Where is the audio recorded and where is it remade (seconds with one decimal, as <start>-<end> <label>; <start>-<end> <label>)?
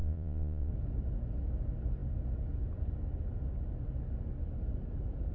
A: 0.0-0.7 remade; 0.7-5.3 recorded